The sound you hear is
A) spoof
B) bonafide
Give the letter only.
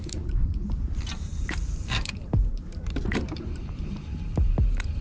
A